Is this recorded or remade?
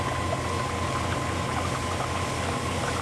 recorded